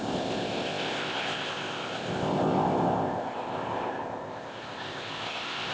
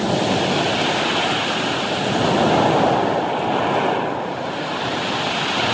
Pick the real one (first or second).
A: second